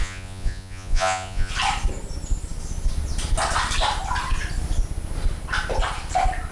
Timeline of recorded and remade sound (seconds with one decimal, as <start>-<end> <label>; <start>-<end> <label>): 0.0-1.5 remade; 1.5-6.5 recorded